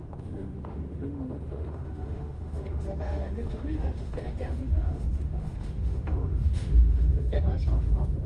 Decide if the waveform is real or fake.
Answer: fake